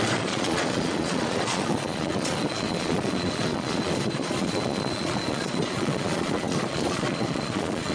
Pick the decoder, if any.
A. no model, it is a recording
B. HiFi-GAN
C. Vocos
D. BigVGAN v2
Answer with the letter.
C